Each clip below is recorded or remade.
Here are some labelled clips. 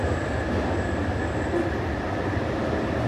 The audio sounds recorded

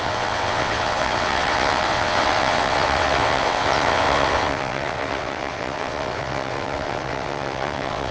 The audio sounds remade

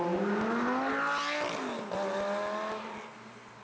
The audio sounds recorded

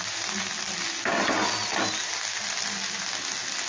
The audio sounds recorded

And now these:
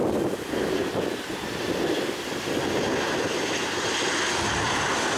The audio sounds recorded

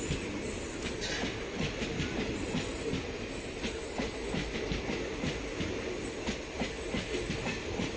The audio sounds recorded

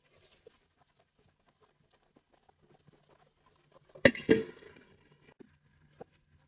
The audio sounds recorded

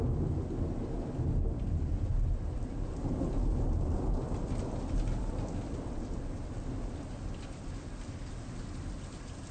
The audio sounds recorded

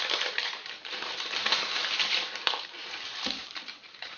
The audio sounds remade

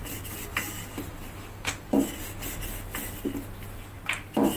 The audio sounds recorded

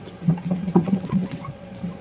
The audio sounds remade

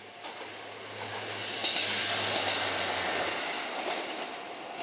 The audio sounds recorded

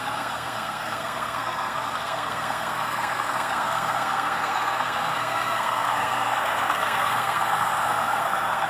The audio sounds remade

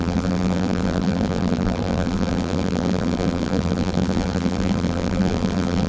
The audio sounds remade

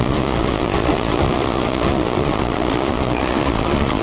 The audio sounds remade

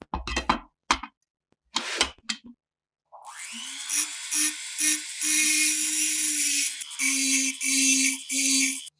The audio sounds recorded